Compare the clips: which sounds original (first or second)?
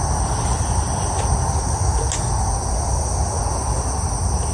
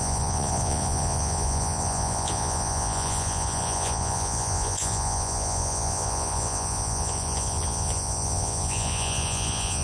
first